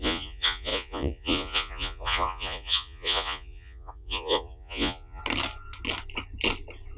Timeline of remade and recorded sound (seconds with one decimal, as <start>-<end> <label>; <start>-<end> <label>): 0.0-5.2 remade; 5.2-7.0 recorded